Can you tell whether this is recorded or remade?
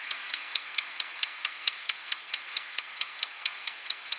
remade